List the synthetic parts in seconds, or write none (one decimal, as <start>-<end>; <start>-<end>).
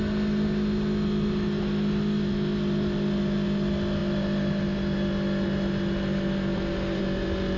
none